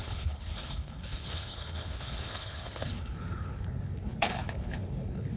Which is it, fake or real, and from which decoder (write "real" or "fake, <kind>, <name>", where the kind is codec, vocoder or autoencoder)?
fake, codec, HILCodec